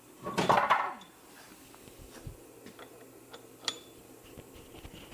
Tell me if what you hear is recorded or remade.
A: recorded